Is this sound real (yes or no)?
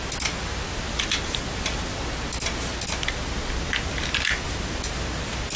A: yes